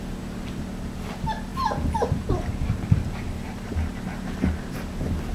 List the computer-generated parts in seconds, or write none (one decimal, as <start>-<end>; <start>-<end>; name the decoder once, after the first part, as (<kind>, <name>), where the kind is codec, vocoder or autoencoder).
none